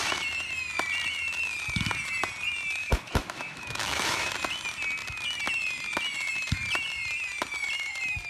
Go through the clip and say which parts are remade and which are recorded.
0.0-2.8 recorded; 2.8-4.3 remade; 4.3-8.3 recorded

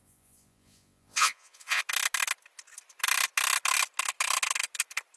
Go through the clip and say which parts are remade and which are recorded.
0.0-1.8 remade; 1.8-5.2 recorded

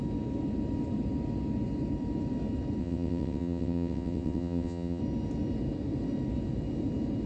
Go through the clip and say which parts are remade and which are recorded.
0.0-2.8 recorded; 2.8-5.0 remade; 5.0-7.3 recorded

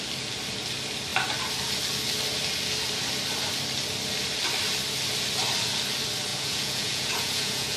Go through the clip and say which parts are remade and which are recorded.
0.0-6.3 recorded; 6.3-7.8 remade

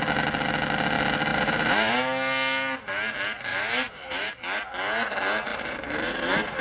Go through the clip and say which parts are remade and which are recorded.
0.0-1.3 recorded; 1.3-1.9 remade; 1.9-3.5 recorded; 3.5-4.3 remade; 4.3-5.5 recorded; 5.5-6.6 remade

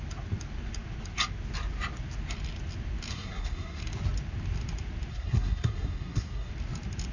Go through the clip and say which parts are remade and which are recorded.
0.0-3.1 recorded; 3.1-3.8 remade; 3.8-5.1 recorded; 5.1-6.5 remade; 6.5-7.1 recorded

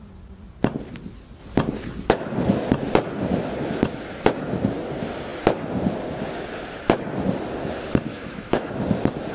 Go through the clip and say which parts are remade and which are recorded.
0.0-8.1 recorded; 8.1-8.7 remade; 8.7-9.3 recorded